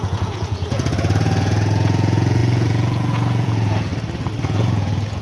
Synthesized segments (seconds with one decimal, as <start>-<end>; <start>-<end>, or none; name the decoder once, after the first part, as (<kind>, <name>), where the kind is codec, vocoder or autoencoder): 0.0-3.9 (vocoder, Vocos); 4.4-5.2